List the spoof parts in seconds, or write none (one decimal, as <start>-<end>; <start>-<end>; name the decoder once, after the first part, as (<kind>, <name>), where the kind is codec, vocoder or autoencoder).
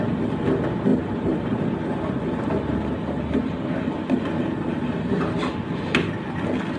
0.9-4.1 (vocoder, BigVGAN v2)